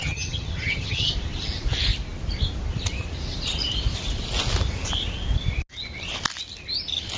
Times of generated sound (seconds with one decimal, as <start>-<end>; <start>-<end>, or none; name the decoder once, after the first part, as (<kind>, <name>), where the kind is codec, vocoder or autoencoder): 0.0-1.1 (vocoder, HiFi-GAN)